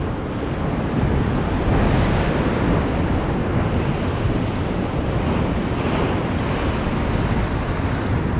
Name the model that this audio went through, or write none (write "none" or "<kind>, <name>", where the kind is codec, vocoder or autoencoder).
none